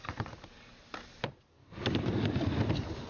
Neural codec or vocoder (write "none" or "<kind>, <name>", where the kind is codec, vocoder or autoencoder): none